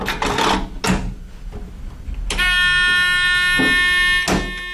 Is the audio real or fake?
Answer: real